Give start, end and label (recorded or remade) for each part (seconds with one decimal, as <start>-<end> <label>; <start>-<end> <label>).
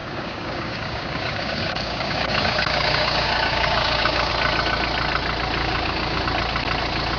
0.0-4.3 remade; 4.3-5.6 recorded; 5.6-6.2 remade; 6.2-7.2 recorded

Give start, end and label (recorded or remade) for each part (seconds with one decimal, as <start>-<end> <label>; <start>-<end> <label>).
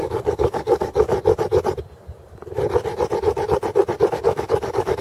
0.0-1.1 remade; 1.1-4.1 recorded; 4.1-5.0 remade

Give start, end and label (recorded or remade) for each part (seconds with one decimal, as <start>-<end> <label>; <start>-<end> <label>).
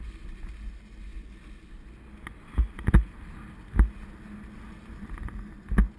0.0-6.0 recorded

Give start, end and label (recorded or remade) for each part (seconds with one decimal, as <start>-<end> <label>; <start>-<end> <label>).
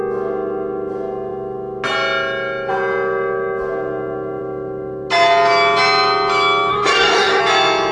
0.0-6.7 recorded; 6.7-7.4 remade; 7.4-7.9 recorded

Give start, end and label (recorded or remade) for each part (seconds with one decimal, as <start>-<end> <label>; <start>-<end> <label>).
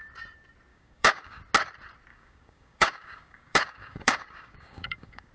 0.0-0.7 recorded; 0.7-1.4 remade; 1.4-2.1 recorded; 2.1-5.3 remade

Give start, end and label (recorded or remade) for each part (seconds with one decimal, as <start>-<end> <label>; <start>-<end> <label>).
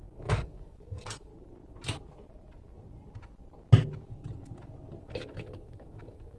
0.0-1.3 remade; 1.3-5.0 recorded; 5.0-6.4 remade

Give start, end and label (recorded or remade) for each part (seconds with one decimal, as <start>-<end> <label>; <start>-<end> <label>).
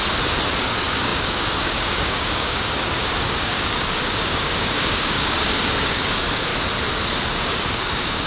0.0-0.6 recorded; 0.6-6.5 remade; 6.5-7.4 recorded; 7.4-8.3 remade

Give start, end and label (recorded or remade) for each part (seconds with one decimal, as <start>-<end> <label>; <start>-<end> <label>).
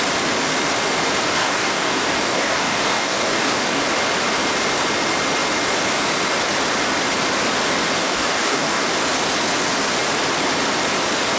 0.0-1.3 recorded; 1.3-3.8 remade; 3.8-8.0 recorded; 8.0-8.9 remade; 8.9-11.4 recorded